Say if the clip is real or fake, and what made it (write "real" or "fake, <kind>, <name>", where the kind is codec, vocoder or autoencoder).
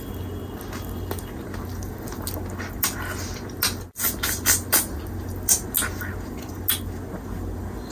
real